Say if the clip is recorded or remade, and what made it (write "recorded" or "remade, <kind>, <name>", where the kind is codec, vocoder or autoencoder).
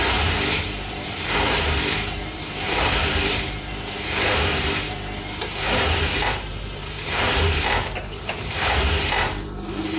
remade, vocoder, BigVGAN v2